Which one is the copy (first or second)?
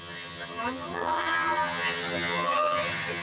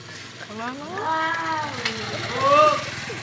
first